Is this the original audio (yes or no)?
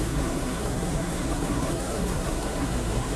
no